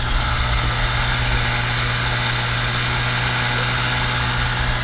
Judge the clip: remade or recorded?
recorded